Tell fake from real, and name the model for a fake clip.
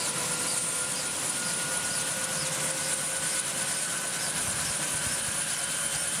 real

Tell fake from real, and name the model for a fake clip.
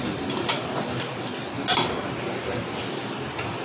real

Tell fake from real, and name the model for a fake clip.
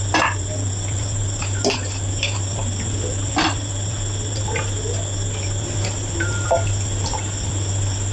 real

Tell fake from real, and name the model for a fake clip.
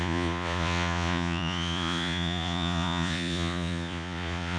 fake, vocoder, Vocos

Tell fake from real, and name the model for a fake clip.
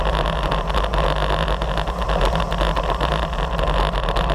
real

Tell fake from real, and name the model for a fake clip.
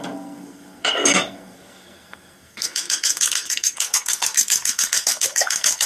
fake, codec, SNAC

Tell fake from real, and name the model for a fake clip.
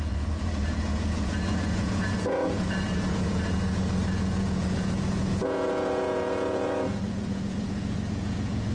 fake, vocoder, Vocos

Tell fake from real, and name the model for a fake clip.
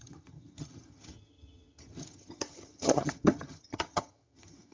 fake, vocoder, HiFi-GAN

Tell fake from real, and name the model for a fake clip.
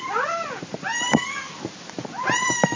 real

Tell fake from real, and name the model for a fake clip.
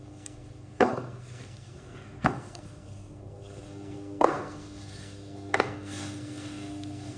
fake, codec, SNAC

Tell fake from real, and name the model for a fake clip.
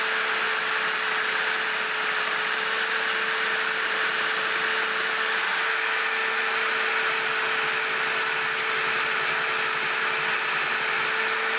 real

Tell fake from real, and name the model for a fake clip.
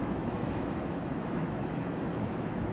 fake, autoencoder, DAC-VAE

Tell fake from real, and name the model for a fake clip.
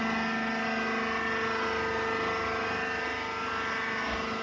real